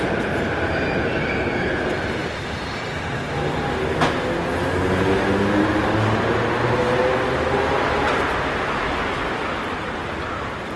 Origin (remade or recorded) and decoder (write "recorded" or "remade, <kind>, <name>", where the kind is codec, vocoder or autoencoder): recorded